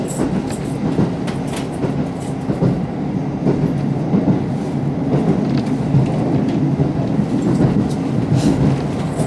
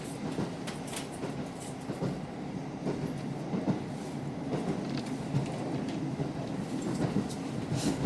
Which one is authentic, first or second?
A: first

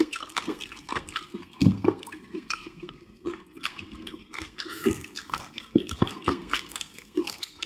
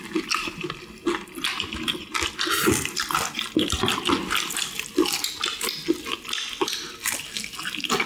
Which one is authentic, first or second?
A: second